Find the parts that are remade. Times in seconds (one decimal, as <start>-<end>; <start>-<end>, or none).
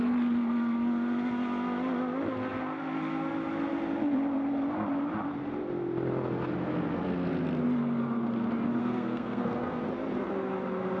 8.8-9.9